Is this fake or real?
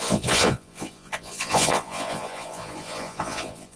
fake